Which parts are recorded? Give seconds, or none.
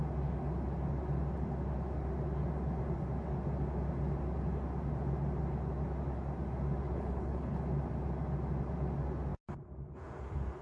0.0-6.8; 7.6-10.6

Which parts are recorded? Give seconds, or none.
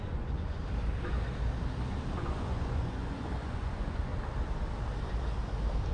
0.6-2.1; 4.1-5.9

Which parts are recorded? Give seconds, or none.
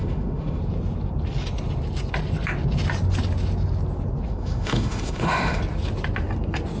0.6-4.3; 5.6-6.8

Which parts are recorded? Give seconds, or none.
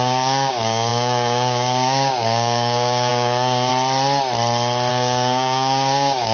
3.7-4.9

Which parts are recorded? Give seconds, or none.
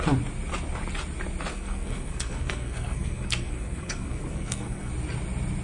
0.0-1.5; 4.9-5.6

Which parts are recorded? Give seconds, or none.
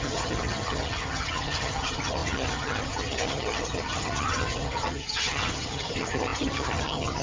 none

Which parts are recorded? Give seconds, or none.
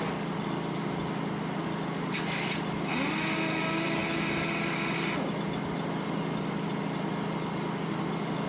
0.0-8.5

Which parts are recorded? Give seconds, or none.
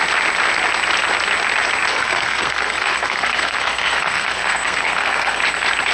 0.0-1.9; 5.4-5.9